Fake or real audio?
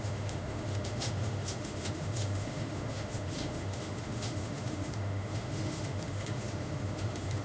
fake